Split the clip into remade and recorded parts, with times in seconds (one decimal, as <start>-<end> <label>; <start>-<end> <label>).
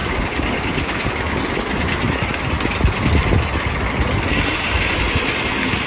0.0-1.4 remade; 1.4-5.9 recorded